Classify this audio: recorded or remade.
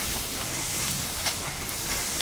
recorded